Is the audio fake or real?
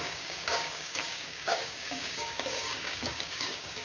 fake